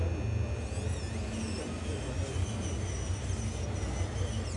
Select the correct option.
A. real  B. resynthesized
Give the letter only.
A